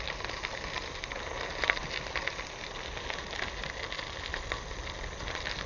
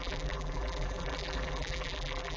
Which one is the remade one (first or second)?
second